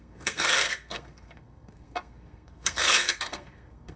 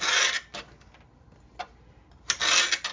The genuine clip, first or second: second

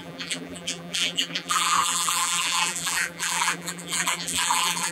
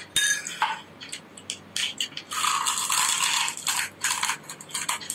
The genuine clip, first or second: second